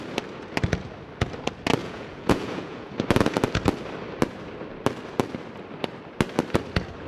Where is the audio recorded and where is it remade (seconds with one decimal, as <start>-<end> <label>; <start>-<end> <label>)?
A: 0.0-1.8 recorded; 1.8-2.9 remade; 2.9-7.1 recorded